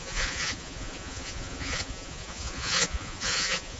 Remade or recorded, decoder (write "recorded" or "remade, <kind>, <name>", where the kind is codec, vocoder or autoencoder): remade, vocoder, Vocos